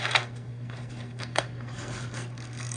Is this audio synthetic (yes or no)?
yes